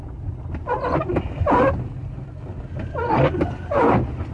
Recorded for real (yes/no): yes